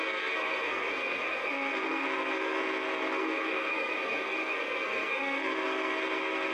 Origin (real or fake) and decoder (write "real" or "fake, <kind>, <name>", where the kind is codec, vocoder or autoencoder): fake, codec, SNAC